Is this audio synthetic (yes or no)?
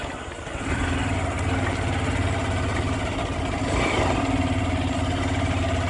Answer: no